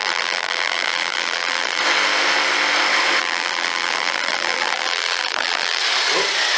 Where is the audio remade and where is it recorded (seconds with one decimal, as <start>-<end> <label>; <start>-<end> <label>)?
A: 0.0-1.8 remade; 1.8-3.2 recorded; 3.2-5.8 remade; 5.8-6.6 recorded